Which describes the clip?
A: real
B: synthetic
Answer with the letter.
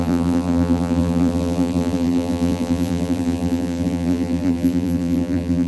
B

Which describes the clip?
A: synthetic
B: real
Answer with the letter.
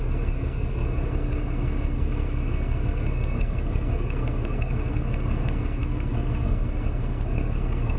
A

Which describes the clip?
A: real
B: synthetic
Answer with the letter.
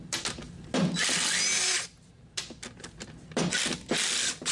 A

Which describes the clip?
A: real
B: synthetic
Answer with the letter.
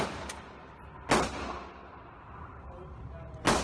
A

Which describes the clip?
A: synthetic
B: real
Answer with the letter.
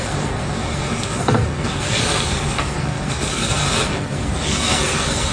A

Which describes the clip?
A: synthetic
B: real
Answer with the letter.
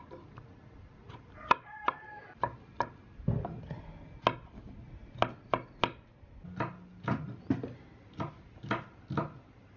B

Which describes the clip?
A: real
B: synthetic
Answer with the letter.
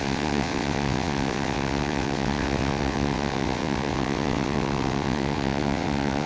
B